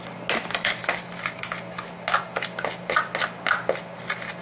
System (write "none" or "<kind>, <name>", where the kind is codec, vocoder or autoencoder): none